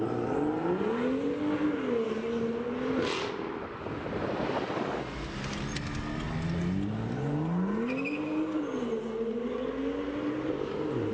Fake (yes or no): no